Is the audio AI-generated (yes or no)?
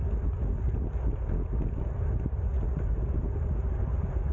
no